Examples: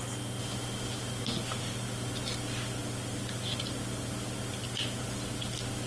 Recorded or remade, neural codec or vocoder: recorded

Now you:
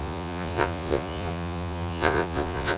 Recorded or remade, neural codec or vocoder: remade, vocoder, Vocos